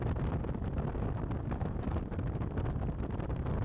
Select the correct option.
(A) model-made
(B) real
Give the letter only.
B